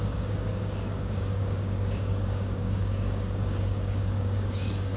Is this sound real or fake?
fake